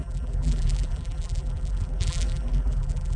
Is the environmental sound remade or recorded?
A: remade